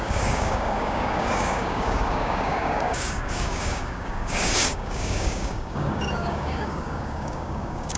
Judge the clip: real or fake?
fake